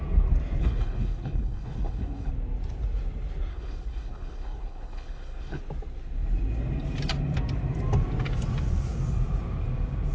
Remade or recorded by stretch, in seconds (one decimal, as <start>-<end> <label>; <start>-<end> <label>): 0.0-0.6 recorded; 0.6-2.3 remade; 2.3-3.5 recorded; 3.5-5.6 remade; 5.6-10.1 recorded